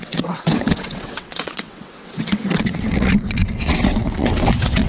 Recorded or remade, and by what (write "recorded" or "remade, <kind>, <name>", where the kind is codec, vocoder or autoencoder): remade, vocoder, WaveNeXt